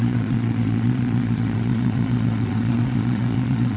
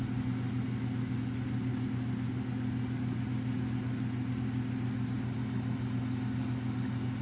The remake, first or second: first